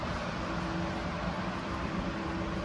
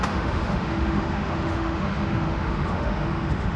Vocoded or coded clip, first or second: second